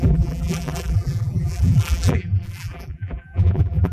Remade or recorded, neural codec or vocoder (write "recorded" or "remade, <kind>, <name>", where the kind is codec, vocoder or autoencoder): remade, vocoder, BigVGAN v2